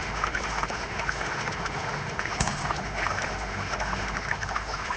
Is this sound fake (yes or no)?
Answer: yes